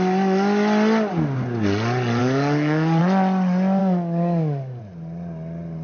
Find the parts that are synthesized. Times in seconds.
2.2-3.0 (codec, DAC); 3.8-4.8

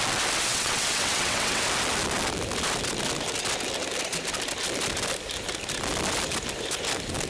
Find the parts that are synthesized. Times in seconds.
0.5-1.6 (vocoder, WaveNeXt)

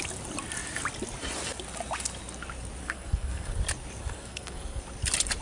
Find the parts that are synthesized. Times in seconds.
2.8-3.6 (codec, SNAC); 4.0-4.8

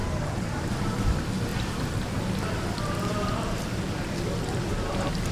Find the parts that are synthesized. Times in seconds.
0.0-1.1 (vocoder, BigVGAN v2); 1.5-2.3; 4.7-5.3

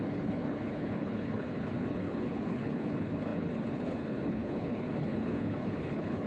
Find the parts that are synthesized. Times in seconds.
0.0-6.3 (codec, HILCodec)

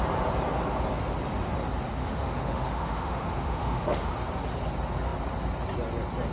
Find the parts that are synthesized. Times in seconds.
2.0-4.1 (autoencoder, DAC-VAE)

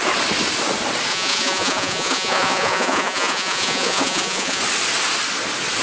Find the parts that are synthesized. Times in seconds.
1.1-4.6 (vocoder, Vocos)

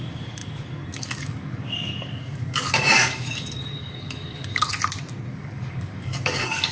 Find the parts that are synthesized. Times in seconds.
0.0-4.7 (codec, DAC); 5.3-6.7